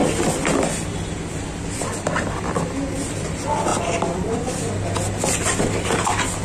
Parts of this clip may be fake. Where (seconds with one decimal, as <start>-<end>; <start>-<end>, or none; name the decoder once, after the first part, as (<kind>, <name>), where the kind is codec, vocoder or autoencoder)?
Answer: none

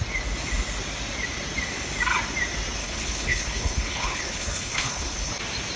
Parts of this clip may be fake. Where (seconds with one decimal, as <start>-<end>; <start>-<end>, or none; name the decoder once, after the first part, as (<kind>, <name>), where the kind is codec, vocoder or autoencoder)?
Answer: 2.8-5.3 (codec, HILCodec)